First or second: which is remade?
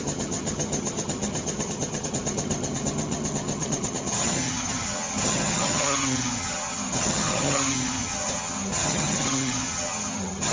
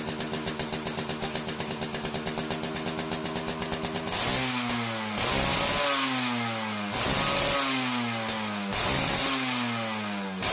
first